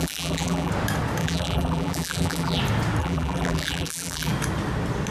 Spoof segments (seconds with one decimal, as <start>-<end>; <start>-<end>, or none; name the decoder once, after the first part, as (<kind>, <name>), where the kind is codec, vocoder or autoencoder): 0.0-0.7 (vocoder, BigVGAN v2); 1.2-2.6; 3.0-4.3